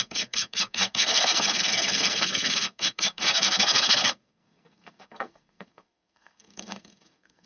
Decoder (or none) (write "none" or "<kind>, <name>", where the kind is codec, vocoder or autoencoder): codec, SNAC